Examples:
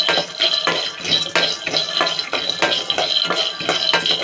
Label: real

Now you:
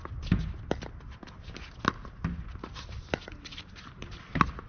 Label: real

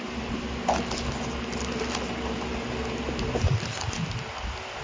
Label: real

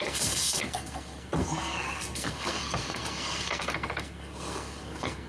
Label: fake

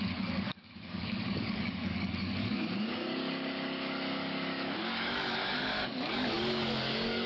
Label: fake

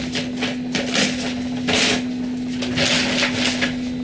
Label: real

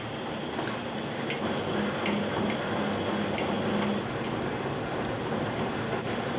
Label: real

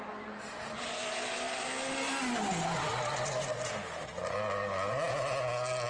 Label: real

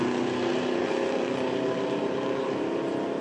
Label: real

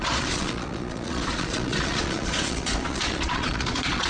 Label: fake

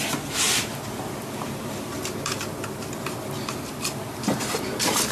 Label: fake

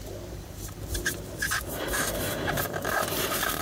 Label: fake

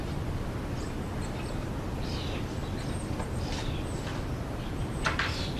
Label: real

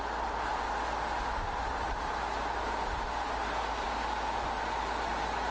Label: real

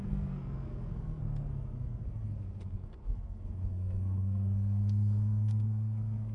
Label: fake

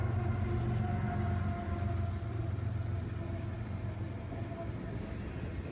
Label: real